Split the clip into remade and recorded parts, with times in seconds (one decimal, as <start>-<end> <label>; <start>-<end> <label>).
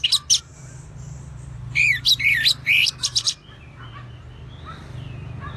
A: 0.0-0.5 recorded; 0.5-3.9 remade; 3.9-5.6 recorded